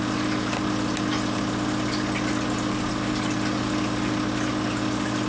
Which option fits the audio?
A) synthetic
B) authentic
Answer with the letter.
B